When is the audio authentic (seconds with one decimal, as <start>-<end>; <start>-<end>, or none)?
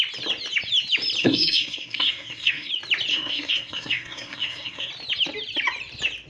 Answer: 0.0-1.2; 2.7-3.1; 4.9-6.3